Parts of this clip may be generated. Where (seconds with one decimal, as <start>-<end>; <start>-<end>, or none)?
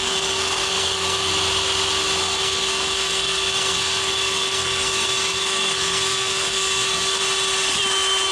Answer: 0.0-1.3; 2.2-7.2